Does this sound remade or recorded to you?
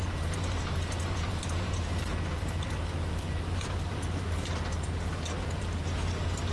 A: remade